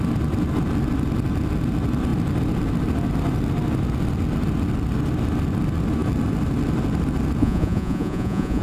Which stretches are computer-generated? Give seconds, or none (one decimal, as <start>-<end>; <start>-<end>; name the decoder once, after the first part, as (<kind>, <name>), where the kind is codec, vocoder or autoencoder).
7.4-8.6 (vocoder, Vocos)